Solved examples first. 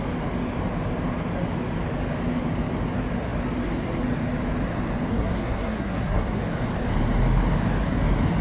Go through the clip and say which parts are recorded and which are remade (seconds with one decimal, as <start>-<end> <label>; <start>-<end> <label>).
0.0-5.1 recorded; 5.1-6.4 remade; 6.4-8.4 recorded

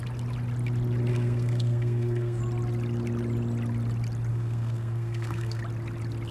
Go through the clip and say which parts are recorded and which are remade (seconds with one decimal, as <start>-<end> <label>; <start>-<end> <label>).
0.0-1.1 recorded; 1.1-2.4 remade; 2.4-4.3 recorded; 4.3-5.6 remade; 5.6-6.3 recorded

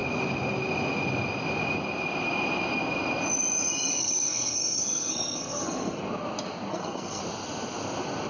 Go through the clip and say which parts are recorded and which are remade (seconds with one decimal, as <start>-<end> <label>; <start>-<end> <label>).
0.0-3.9 recorded; 3.9-6.0 remade; 6.0-6.7 recorded; 6.7-7.2 remade; 7.2-8.3 recorded